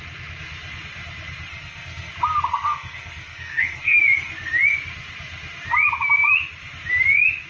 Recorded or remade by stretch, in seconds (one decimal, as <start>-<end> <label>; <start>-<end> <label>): 0.0-1.5 recorded; 1.5-2.1 remade; 2.1-2.5 recorded; 2.5-4.0 remade; 4.0-7.5 recorded